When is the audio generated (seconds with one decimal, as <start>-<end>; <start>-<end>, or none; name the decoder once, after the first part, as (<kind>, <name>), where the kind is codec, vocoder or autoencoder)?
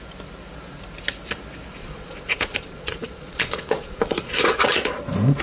1.8-5.0 (vocoder, Vocos)